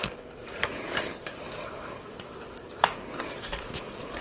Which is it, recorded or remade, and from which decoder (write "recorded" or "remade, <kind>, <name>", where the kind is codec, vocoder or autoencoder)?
remade, codec, DAC